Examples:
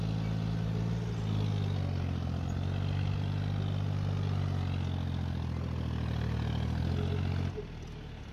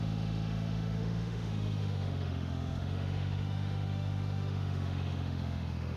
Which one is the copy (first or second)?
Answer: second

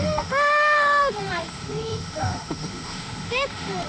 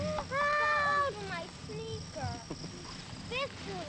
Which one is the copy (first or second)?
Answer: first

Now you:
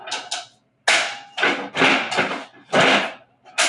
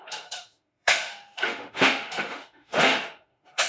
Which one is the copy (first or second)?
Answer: second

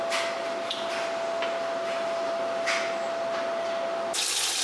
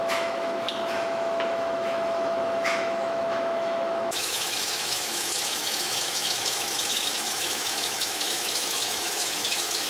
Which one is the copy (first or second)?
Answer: second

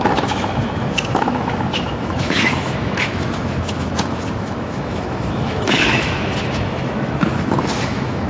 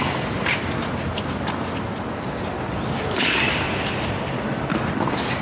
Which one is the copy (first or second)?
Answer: first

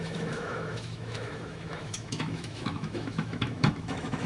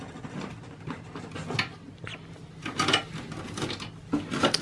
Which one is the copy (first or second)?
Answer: first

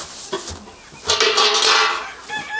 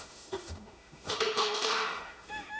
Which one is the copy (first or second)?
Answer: second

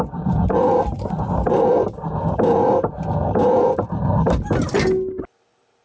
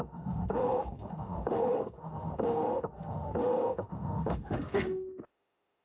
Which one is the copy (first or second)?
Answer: second